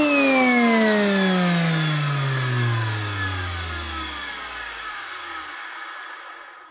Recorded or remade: recorded